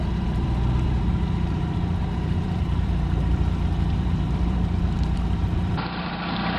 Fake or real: fake